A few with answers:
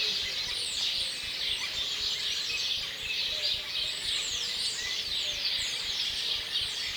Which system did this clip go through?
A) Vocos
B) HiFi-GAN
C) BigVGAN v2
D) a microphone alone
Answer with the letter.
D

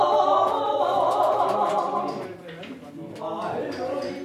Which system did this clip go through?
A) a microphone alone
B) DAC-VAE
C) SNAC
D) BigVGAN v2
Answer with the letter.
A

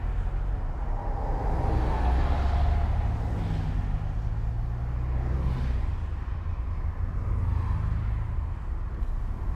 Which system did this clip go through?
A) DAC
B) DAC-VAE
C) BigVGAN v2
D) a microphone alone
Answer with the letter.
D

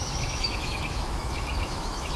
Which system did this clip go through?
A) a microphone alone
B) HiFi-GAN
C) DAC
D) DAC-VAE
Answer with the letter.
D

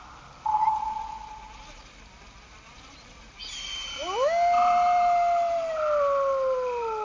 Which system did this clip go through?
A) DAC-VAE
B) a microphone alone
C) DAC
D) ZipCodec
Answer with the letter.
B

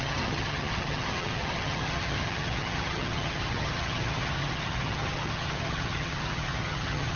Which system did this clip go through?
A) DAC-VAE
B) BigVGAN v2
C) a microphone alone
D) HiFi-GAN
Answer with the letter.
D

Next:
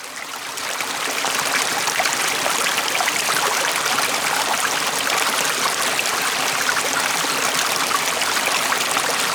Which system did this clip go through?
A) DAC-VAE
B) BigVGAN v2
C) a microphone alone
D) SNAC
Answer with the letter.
B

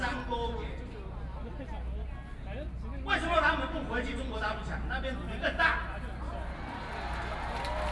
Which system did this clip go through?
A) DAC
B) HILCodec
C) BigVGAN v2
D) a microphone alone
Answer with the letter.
D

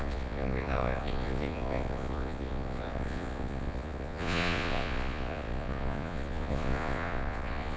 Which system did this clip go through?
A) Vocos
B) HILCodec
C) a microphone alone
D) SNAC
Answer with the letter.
A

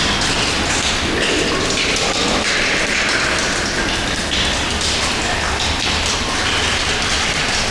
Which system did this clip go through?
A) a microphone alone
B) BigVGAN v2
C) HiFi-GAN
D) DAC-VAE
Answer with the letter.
A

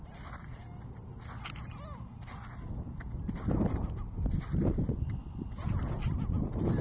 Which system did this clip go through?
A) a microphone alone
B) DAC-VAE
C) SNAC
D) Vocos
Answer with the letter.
A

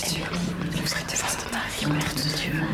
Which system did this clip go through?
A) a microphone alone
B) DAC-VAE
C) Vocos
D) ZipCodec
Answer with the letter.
A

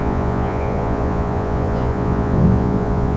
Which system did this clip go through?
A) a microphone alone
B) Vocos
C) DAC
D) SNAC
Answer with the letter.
B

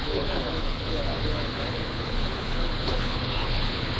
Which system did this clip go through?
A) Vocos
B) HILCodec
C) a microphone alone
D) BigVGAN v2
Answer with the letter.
B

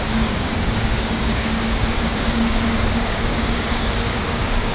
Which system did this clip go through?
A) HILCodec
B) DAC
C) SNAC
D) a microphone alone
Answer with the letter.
B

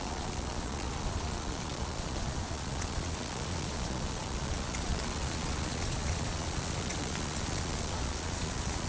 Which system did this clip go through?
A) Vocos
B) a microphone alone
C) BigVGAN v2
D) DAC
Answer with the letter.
A